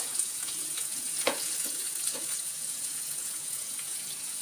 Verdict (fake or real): fake